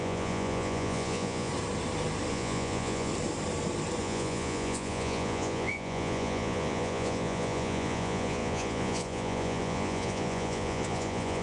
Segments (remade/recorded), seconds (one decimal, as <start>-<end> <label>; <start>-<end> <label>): 0.0-1.5 remade; 1.5-2.3 recorded; 2.3-3.1 remade; 3.1-4.0 recorded; 4.0-11.4 remade